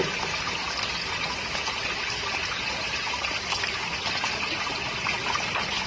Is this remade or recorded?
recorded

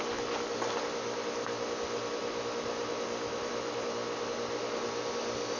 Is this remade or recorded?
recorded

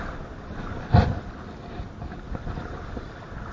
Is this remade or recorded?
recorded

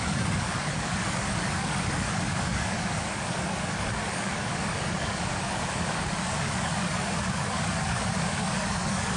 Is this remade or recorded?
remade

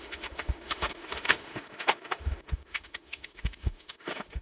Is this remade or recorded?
remade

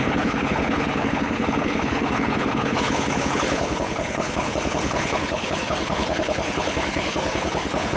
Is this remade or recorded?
remade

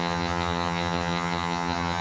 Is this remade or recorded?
remade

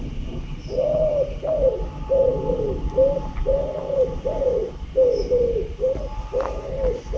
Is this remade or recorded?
recorded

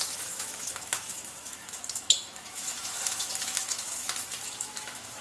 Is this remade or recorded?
remade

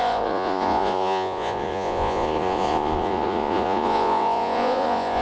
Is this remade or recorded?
remade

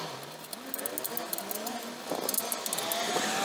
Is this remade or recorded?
recorded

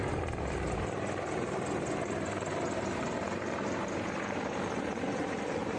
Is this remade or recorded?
remade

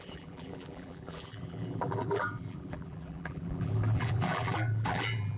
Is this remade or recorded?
remade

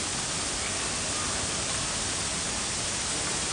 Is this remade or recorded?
recorded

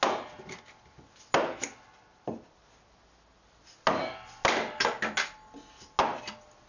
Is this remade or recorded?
recorded